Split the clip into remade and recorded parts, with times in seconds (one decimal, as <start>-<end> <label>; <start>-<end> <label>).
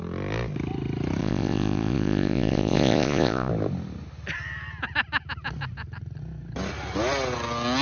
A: 0.0-1.2 recorded; 1.2-3.5 remade; 3.5-7.8 recorded